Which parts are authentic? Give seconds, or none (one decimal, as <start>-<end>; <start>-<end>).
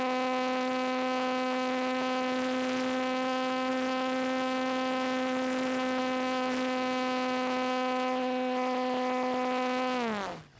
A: 0.0-10.6